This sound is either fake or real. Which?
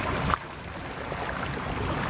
real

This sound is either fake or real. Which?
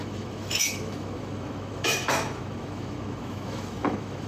fake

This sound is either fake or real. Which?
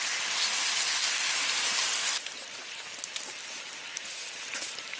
real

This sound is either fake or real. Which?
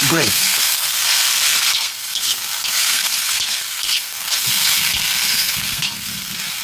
fake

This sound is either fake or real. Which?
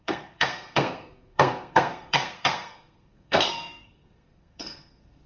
fake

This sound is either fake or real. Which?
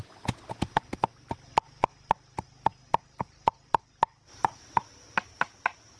real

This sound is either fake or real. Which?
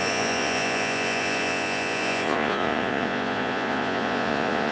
fake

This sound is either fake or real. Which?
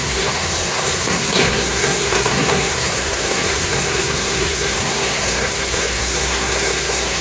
fake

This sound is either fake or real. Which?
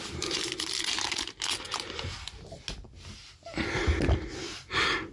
real